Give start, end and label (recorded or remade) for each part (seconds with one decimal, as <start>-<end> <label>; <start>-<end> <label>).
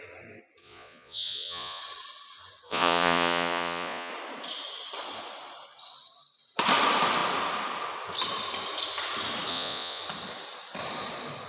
0.0-0.6 recorded; 0.6-1.8 remade; 1.8-2.7 recorded; 2.7-4.1 remade; 4.1-9.5 recorded; 9.5-10.0 remade; 10.0-11.5 recorded